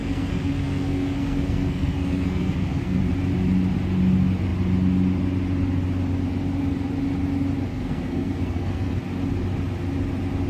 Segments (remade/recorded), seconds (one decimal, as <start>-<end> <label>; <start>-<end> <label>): 0.0-3.0 remade; 3.0-7.7 recorded; 7.7-9.0 remade; 9.0-10.5 recorded